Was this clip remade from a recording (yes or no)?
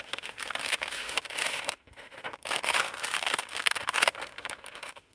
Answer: yes